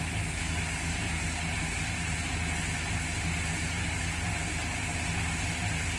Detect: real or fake real